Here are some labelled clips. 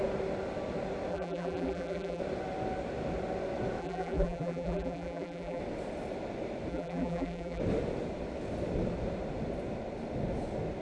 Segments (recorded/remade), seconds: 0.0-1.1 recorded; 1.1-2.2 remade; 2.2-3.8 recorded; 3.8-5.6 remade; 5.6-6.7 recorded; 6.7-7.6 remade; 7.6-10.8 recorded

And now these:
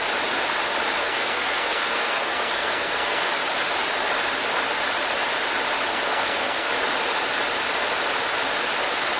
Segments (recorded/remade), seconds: 0.0-1.0 recorded; 1.0-3.3 remade; 3.3-5.9 recorded; 5.9-6.7 remade; 6.7-9.2 recorded